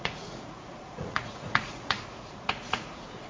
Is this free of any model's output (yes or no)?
no